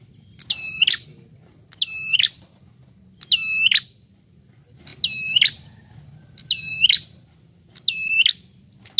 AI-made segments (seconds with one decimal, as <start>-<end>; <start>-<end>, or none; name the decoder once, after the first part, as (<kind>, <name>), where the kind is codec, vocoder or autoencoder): none